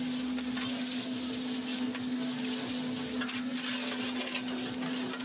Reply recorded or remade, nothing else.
recorded